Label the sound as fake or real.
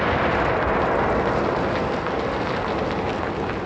real